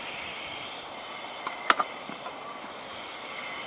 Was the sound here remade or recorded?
recorded